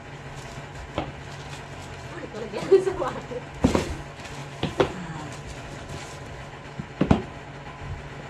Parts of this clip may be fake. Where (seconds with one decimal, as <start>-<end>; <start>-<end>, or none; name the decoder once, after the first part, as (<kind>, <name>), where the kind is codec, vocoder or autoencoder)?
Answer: 1.8-2.4 (vocoder, BigVGAN v2); 4.4-5.2